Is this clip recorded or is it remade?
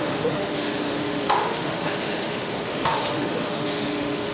remade